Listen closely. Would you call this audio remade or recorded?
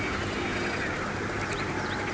recorded